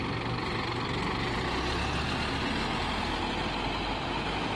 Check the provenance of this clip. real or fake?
real